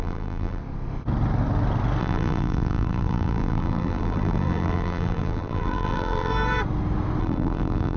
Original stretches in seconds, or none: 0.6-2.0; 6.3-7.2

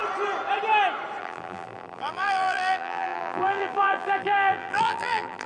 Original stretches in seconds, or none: 0.0-1.2

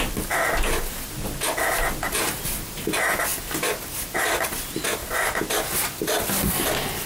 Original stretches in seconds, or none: 0.0-7.1